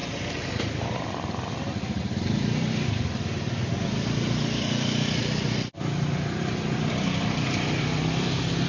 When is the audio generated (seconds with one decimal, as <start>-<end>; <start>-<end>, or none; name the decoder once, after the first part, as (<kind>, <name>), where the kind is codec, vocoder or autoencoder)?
0.0-5.2 (vocoder, BigVGAN v2); 6.4-8.7